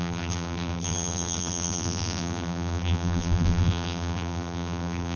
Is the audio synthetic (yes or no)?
yes